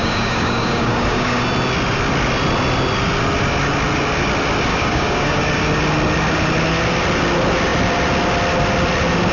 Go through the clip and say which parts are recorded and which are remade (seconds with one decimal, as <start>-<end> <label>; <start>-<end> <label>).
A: 0.0-1.4 remade; 1.4-4.7 recorded; 4.7-5.4 remade; 5.4-9.3 recorded